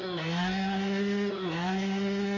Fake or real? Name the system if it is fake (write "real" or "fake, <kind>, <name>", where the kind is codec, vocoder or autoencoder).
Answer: fake, codec, SNAC